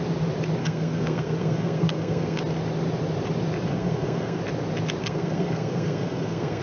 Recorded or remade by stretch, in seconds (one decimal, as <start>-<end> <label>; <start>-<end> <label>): 0.0-0.6 recorded; 0.6-2.4 remade; 2.4-3.7 recorded; 3.7-4.4 remade; 4.4-5.0 recorded; 5.0-6.6 remade